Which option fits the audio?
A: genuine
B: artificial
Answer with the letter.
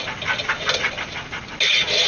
A